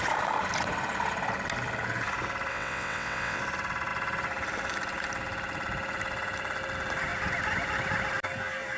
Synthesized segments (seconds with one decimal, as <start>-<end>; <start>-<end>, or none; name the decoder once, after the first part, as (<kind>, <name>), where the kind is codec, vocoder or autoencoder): 2.5-3.4 (vocoder, WaveNeXt)